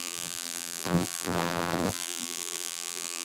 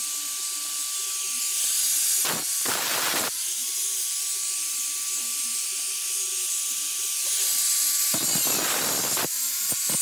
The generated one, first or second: first